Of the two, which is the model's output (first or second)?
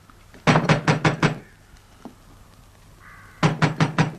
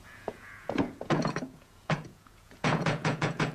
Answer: second